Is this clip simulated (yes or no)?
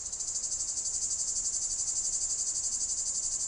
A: yes